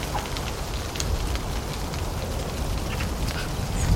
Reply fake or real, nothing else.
real